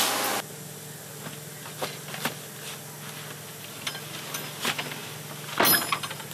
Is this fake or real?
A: real